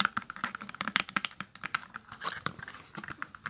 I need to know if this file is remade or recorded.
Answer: recorded